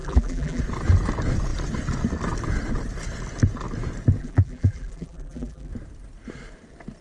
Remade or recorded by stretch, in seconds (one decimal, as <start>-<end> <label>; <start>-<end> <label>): 0.0-0.6 remade; 0.6-4.2 recorded; 4.2-5.7 remade; 5.7-7.0 recorded